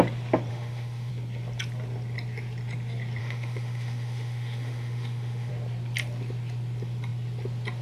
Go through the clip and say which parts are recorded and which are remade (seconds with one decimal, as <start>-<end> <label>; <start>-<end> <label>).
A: 0.0-0.5 recorded; 0.5-1.1 remade; 1.1-3.2 recorded; 3.2-5.5 remade; 5.5-7.8 recorded